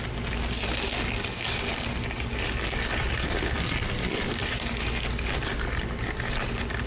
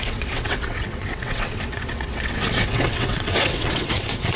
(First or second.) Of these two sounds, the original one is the first